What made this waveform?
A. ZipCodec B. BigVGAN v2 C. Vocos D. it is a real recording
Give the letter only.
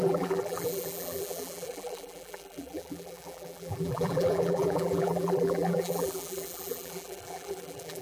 B